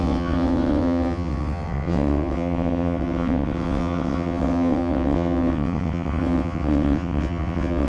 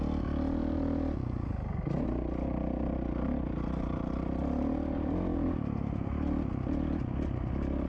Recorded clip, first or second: second